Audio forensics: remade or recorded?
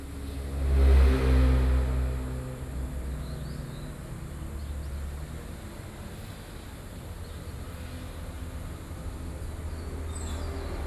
recorded